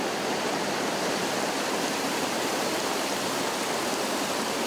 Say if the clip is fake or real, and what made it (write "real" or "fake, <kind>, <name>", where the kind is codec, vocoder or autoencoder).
fake, vocoder, BigVGAN v2